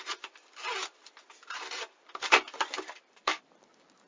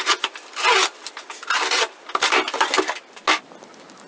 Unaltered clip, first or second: second